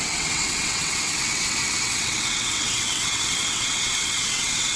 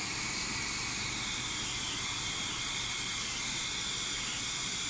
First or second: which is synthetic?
first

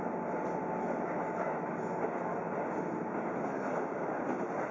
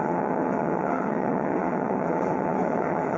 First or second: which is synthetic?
second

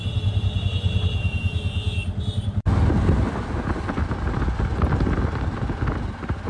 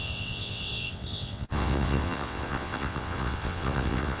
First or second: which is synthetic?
second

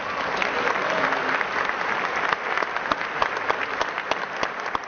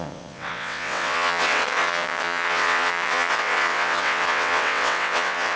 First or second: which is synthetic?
second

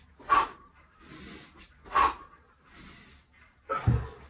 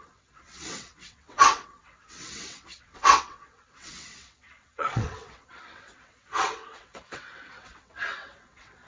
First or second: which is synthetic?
second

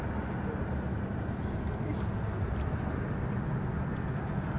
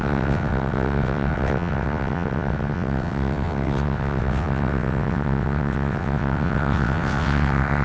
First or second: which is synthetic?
second